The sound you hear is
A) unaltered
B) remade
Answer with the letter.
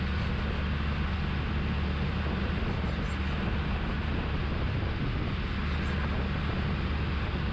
A